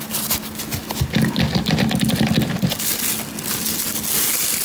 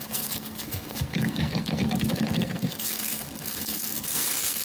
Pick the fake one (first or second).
second